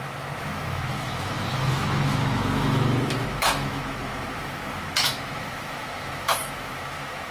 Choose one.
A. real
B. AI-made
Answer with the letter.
B